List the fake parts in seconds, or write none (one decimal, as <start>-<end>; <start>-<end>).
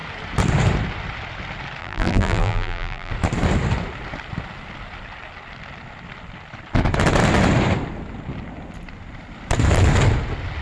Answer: 1.8-3.1